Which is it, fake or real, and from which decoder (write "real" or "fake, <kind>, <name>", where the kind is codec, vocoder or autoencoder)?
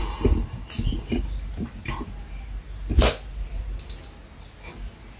real